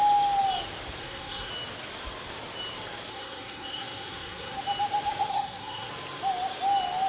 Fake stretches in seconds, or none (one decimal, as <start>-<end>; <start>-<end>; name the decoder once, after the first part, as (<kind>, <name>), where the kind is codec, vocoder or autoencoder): 1.0-1.5 (codec, SNAC); 3.1-4.6; 5.3-5.9